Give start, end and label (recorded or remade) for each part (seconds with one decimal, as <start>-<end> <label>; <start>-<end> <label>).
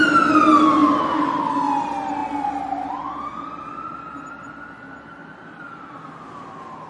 0.0-6.9 recorded